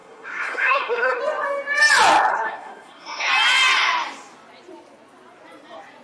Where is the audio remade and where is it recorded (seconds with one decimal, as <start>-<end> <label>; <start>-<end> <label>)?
0.0-1.2 remade; 1.2-2.3 recorded; 2.3-3.3 remade; 3.3-6.0 recorded